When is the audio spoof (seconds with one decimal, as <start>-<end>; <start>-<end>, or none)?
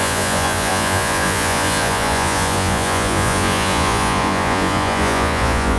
0.0-5.8